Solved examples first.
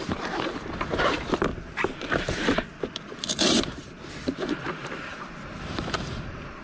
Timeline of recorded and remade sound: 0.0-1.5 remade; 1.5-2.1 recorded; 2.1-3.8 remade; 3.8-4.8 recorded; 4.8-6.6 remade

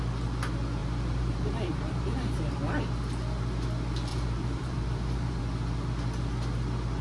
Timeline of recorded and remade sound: 0.0-0.8 recorded; 0.8-2.7 remade; 2.7-4.1 recorded; 4.1-5.4 remade; 5.4-7.0 recorded